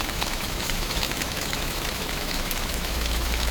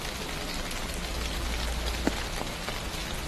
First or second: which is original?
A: second